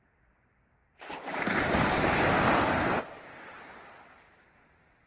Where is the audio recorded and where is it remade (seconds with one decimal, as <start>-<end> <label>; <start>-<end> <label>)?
0.0-5.1 recorded